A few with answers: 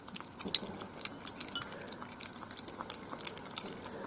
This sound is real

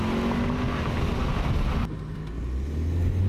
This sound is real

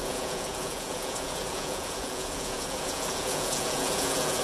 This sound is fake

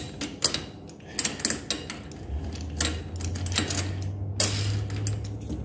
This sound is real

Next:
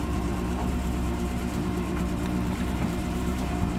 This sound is fake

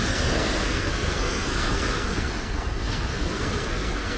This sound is fake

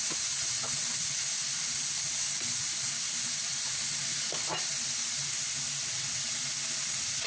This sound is real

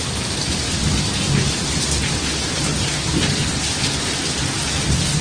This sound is real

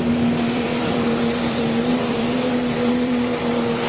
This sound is fake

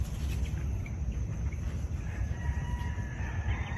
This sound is real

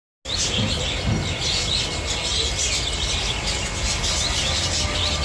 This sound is real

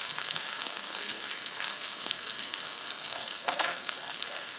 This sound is fake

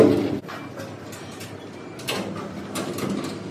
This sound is real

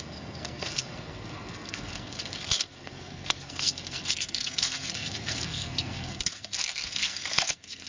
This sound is fake